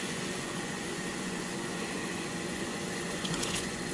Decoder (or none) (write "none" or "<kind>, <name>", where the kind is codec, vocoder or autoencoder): vocoder, Vocos